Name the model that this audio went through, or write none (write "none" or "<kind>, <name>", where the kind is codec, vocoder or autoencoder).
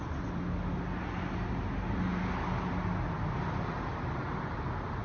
none